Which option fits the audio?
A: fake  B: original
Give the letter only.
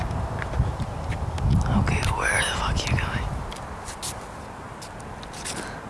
B